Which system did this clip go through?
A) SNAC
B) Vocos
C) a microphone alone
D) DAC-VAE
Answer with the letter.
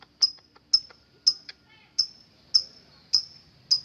C